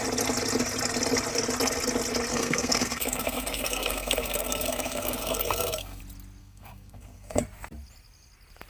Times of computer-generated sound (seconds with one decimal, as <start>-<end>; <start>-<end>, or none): 2.3-6.0; 6.4-7.4